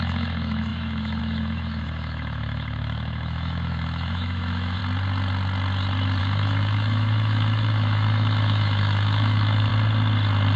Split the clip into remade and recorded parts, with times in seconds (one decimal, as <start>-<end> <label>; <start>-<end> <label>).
0.0-4.8 remade; 4.8-6.2 recorded; 6.2-9.7 remade; 9.7-10.6 recorded